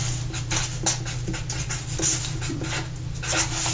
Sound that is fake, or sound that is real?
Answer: real